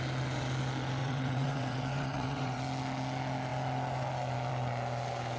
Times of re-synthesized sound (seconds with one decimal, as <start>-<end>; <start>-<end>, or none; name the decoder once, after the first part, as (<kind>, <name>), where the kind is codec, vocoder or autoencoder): 1.0-2.6 (vocoder, WaveNeXt)